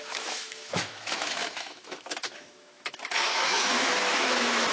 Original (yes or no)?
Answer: no